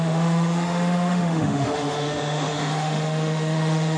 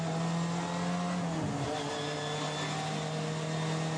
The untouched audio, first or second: second